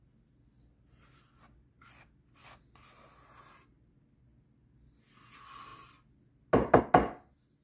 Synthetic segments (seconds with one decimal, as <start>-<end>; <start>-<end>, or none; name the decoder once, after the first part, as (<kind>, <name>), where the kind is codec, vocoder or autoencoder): none